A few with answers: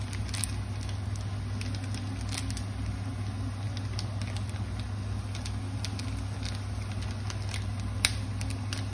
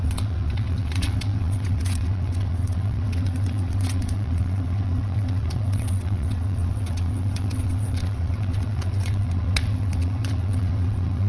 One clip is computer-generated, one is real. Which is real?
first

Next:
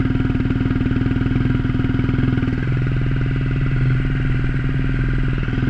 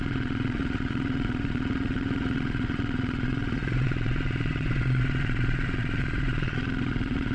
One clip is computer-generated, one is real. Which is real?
first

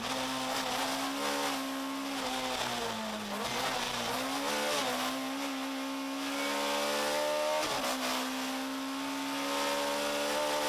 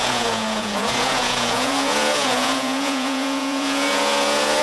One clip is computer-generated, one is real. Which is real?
first